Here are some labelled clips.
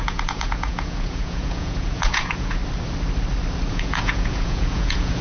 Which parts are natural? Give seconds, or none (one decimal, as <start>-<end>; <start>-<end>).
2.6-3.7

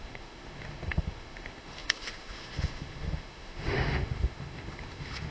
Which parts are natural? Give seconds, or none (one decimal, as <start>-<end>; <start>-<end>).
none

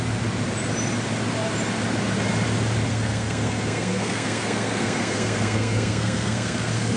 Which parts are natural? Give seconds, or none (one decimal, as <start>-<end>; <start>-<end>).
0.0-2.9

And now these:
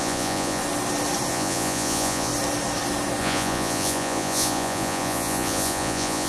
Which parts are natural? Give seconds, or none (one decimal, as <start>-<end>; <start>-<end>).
0.6-1.3; 2.3-3.2

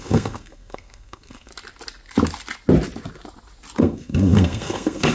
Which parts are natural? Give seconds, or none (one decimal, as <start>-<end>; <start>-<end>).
1.5-3.8

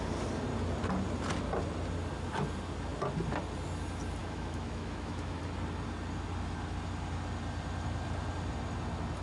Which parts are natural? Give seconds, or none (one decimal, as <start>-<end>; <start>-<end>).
0.0-4.2; 5.4-9.2

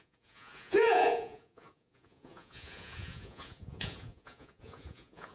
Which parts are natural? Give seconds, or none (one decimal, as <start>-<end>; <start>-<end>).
none